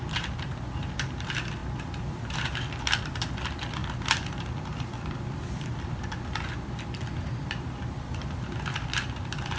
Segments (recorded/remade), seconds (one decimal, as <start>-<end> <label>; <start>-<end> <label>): 0.0-9.6 remade